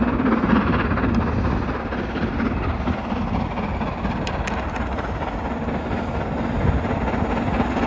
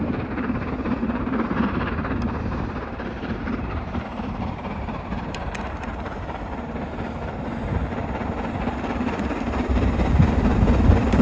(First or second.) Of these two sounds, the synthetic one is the second